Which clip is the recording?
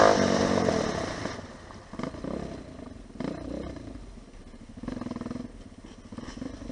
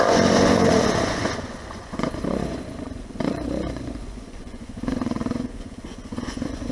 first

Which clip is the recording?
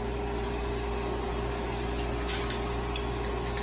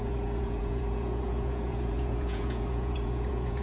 first